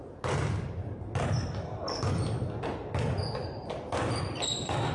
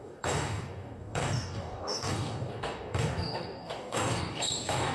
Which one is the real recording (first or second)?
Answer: first